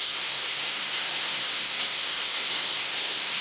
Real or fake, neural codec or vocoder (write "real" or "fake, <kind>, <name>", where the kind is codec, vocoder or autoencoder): fake, codec, SNAC